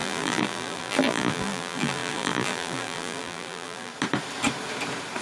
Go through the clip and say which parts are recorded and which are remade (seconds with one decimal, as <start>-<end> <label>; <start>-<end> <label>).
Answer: 0.0-3.9 remade; 3.9-5.2 recorded